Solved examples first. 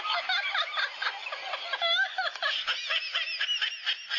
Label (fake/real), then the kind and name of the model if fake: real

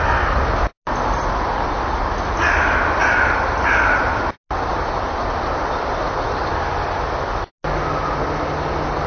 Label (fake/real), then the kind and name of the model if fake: real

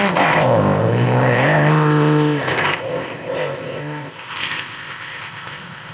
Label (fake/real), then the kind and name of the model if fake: fake, codec, ZipCodec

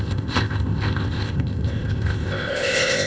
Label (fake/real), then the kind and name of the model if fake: fake, codec, ZipCodec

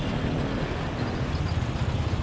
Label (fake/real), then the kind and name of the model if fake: real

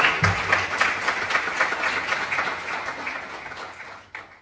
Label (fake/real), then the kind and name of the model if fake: real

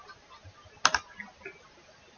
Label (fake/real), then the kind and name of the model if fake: real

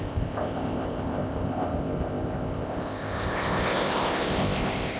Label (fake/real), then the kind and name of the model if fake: fake, codec, ZipCodec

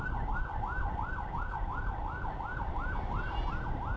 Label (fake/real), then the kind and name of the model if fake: real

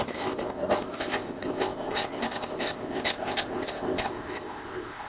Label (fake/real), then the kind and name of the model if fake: fake, codec, ZipCodec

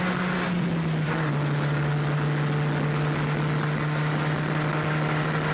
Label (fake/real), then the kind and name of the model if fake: real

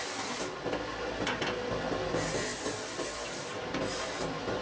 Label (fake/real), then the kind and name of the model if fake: real